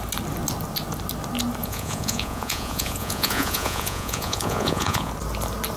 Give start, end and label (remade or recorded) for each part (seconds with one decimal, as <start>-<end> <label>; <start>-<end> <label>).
0.0-1.6 recorded; 1.6-5.1 remade; 5.1-5.8 recorded